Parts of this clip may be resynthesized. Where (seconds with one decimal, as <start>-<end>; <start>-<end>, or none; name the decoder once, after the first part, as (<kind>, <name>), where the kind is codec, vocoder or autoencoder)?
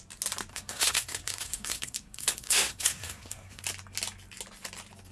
0.5-3.6 (codec, SNAC)